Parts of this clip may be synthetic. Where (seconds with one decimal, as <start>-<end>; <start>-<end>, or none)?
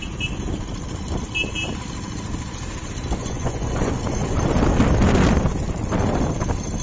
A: 3.2-3.9